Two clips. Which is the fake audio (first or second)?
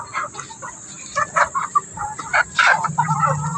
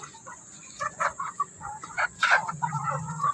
second